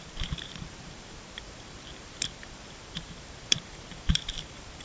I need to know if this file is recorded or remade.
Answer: remade